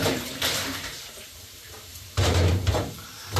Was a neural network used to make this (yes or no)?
yes